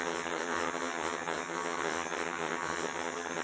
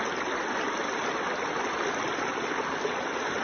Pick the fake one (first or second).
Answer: first